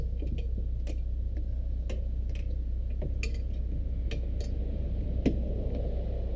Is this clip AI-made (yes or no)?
no